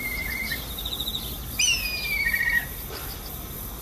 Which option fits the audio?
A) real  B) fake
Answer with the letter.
A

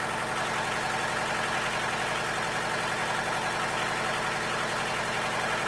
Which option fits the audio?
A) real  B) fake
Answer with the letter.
A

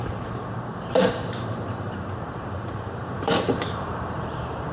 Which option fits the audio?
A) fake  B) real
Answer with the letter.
A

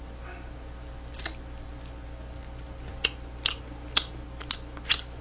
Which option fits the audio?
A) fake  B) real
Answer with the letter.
B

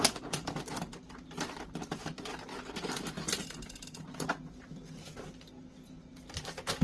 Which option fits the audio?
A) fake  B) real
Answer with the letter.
A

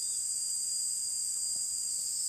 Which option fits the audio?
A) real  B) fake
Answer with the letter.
B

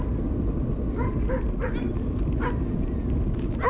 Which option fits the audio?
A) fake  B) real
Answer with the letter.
B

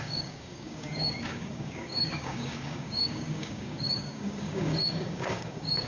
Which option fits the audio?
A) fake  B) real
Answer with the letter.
A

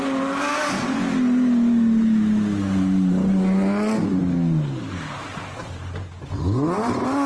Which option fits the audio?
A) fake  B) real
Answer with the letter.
B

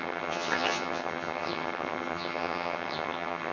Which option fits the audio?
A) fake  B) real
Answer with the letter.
A